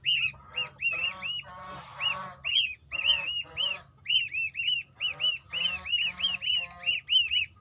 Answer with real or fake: real